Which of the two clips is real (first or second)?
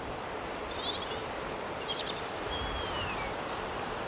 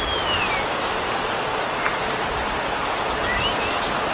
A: second